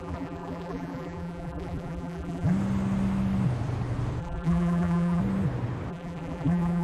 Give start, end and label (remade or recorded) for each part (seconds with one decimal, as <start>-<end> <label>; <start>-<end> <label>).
0.0-2.5 remade; 2.5-4.2 recorded; 4.2-5.2 remade; 5.2-5.9 recorded; 5.9-6.8 remade